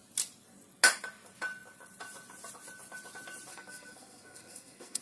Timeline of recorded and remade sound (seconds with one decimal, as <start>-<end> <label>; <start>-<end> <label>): 0.0-3.5 recorded; 3.5-5.0 remade